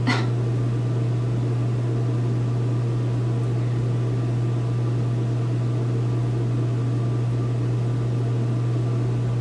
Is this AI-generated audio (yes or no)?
no